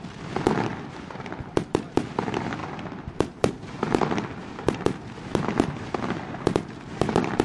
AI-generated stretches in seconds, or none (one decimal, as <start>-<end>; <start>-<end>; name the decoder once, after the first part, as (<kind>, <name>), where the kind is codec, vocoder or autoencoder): none

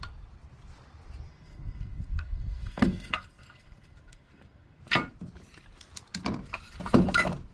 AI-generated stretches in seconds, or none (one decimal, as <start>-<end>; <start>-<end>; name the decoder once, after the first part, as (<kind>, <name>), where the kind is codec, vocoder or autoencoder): 1.3-4.8 (codec, SNAC)

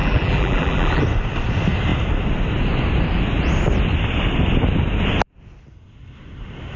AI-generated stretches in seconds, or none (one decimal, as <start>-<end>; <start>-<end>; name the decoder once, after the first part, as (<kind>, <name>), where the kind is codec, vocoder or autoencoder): 0.0-1.0 (vocoder, BigVGAN v2)

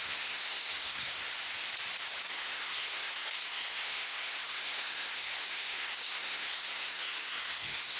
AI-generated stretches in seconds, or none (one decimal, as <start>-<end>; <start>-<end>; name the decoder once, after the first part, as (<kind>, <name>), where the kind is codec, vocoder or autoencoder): 0.0-1.3 (codec, SNAC); 2.3-8.0

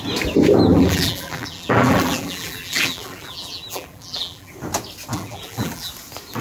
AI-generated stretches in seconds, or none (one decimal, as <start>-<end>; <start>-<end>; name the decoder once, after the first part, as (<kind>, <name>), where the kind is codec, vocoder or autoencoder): 0.7-4.5 (vocoder, BigVGAN v2); 5.1-5.9

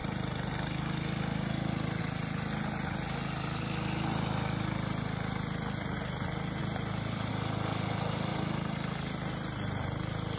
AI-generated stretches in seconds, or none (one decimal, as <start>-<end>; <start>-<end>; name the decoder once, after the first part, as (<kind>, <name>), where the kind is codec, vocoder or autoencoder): 6.6-7.3 (vocoder, BigVGAN v2); 8.3-9.8